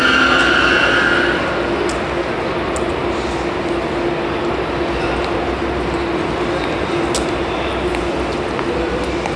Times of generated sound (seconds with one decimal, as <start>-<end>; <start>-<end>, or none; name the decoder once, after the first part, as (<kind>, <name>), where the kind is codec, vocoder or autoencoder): none